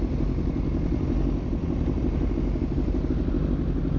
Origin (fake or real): real